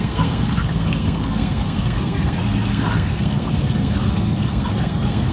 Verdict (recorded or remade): remade